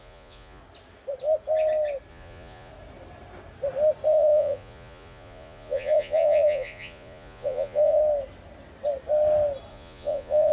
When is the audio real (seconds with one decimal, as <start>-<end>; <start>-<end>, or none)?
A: 0.6-2.1; 2.7-4.1; 8.0-9.7